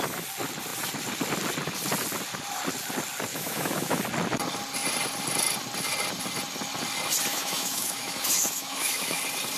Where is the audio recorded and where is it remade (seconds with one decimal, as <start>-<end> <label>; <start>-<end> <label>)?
0.0-3.3 recorded; 3.3-4.0 remade; 4.0-7.3 recorded; 7.3-9.2 remade; 9.2-9.6 recorded